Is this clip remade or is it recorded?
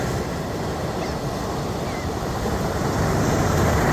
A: recorded